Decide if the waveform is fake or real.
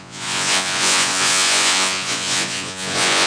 fake